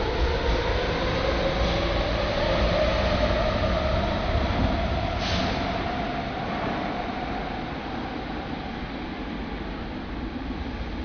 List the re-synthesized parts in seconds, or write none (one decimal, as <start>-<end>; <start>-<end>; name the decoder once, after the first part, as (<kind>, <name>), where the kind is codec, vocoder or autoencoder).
none

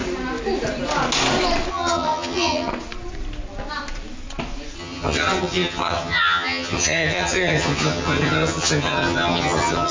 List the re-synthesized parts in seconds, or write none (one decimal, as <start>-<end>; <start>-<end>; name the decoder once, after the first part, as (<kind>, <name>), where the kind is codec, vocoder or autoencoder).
1.7-2.7 (vocoder, HiFi-GAN); 4.8-9.9

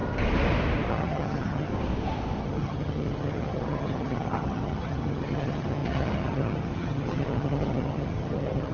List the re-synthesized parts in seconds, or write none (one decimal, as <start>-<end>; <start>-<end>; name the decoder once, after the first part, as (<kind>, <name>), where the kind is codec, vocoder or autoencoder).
0.9-1.7 (vocoder, HiFi-GAN); 2.4-8.7

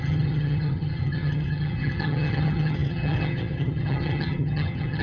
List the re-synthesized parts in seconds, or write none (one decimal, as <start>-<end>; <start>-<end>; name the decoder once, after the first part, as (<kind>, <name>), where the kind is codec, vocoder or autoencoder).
0.0-5.0 (vocoder, HiFi-GAN)

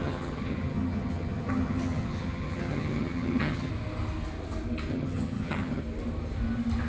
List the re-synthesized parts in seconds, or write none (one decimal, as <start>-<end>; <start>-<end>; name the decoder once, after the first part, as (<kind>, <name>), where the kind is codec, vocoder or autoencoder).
0.0-3.7 (vocoder, HiFi-GAN); 4.9-5.8